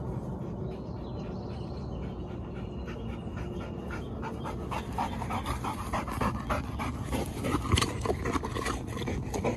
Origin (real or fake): real